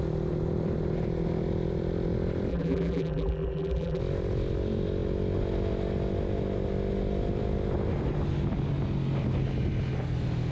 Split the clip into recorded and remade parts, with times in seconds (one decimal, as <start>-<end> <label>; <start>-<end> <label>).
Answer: 0.0-2.5 recorded; 2.5-4.0 remade; 4.0-10.5 recorded